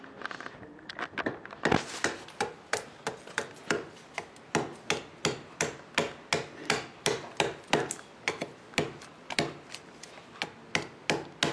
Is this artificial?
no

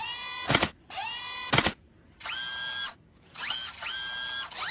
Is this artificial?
no